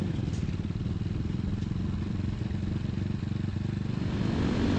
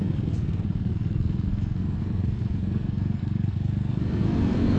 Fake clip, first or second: second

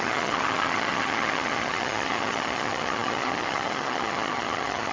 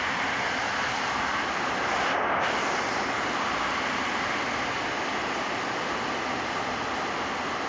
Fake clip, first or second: first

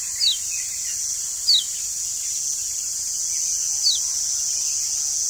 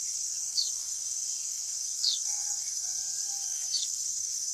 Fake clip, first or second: second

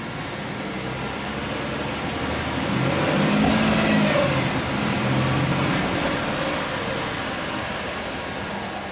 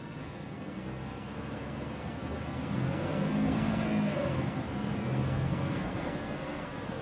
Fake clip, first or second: second